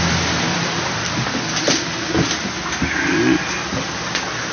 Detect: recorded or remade recorded